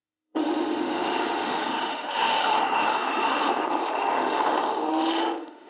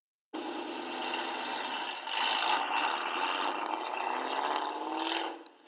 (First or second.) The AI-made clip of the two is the first